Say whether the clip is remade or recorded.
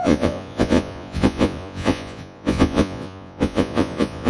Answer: remade